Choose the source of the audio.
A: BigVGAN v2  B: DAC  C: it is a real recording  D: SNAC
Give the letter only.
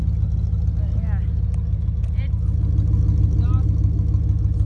C